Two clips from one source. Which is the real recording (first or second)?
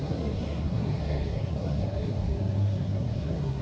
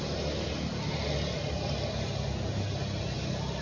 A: second